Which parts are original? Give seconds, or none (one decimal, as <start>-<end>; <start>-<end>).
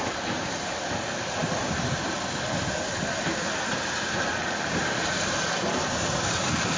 0.0-1.4; 3.7-6.8